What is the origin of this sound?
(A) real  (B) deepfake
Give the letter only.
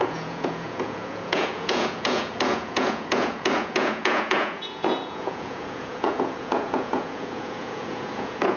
B